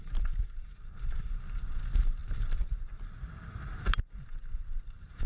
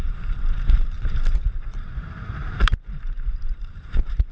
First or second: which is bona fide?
first